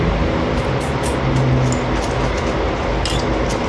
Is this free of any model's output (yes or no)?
yes